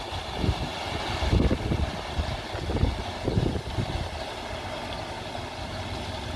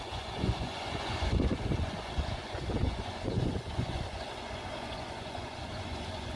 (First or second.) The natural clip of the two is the first